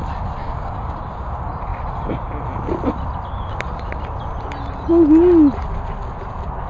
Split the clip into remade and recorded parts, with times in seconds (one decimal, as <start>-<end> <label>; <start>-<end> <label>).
0.0-0.4 recorded; 0.4-0.9 remade; 0.9-6.7 recorded